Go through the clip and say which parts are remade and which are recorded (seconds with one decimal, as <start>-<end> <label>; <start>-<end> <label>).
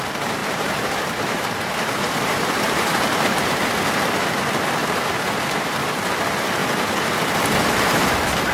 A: 0.0-0.4 recorded; 0.4-3.7 remade; 3.7-4.8 recorded; 4.8-6.1 remade; 6.1-8.5 recorded